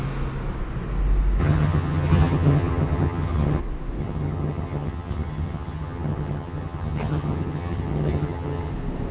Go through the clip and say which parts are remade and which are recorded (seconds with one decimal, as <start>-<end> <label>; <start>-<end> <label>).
0.0-1.4 recorded; 1.4-3.6 remade; 3.6-4.0 recorded; 4.0-8.7 remade; 8.7-9.1 recorded